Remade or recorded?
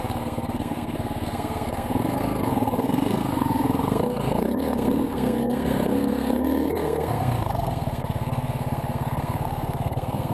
remade